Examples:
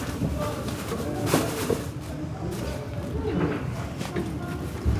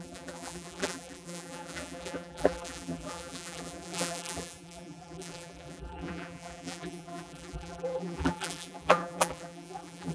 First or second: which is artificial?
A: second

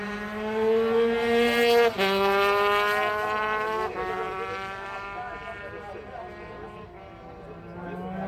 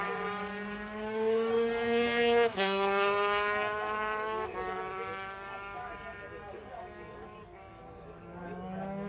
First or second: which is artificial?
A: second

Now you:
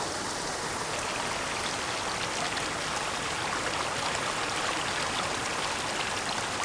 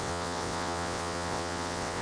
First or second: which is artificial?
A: second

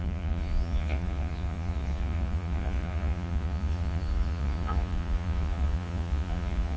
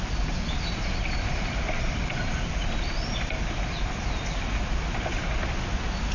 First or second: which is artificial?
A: first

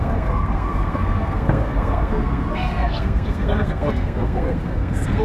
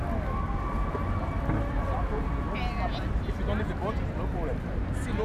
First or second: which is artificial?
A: first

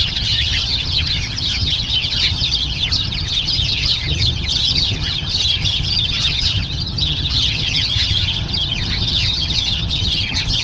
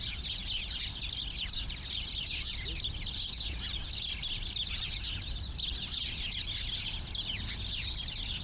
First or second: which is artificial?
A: first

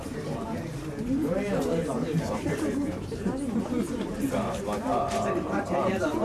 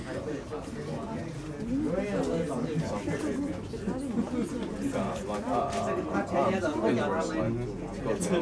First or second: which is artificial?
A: first